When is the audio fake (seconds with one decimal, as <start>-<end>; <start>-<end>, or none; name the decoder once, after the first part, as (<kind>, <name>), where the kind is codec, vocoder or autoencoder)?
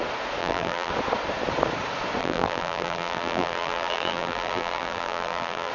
0.4-0.9 (vocoder, BigVGAN v2); 2.2-5.7